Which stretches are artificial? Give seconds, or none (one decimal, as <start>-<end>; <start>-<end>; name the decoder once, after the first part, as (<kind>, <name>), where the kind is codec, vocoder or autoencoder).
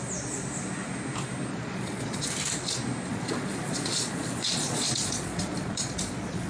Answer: 1.5-2.2 (vocoder, Vocos); 3.1-6.5